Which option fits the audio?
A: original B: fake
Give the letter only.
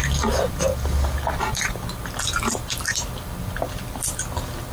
B